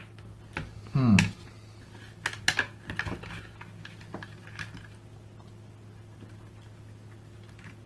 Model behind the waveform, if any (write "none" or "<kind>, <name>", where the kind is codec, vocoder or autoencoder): none